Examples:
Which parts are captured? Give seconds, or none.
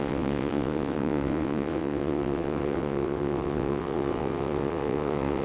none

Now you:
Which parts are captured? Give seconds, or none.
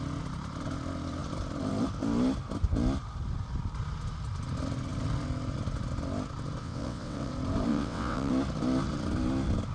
0.0-6.6; 7.3-7.7; 8.3-9.7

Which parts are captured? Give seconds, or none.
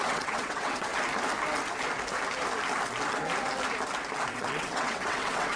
0.9-4.3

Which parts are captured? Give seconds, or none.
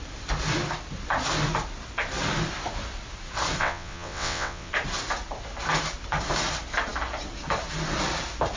0.0-3.6; 4.7-8.6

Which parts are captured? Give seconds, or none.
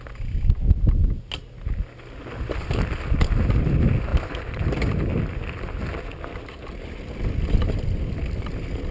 0.0-8.9